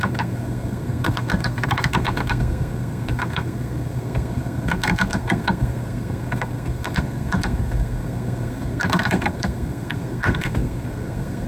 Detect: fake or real fake